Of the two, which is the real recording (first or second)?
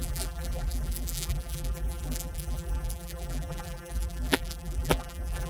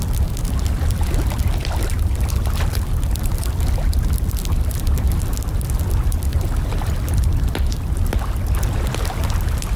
second